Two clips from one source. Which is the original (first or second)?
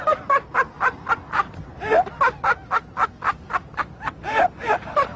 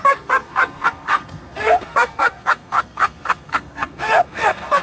first